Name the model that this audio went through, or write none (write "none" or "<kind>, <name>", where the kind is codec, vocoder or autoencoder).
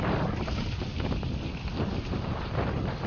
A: none